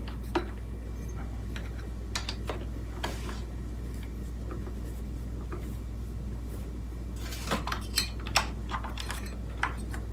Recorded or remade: recorded